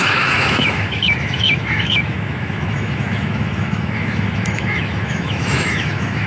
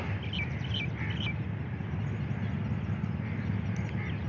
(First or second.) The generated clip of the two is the first